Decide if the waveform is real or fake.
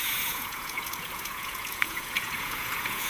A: fake